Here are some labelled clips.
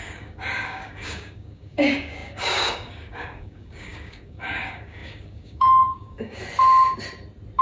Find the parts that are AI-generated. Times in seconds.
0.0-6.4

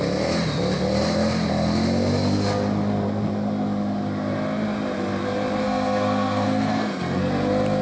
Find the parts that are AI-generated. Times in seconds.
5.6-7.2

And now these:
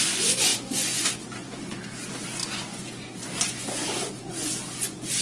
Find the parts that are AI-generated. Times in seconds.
0.0-5.2

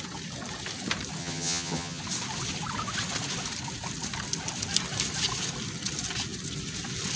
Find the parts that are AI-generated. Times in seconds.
1.2-2.0

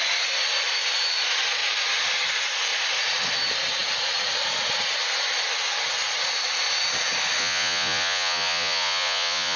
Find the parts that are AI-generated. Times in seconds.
7.4-9.6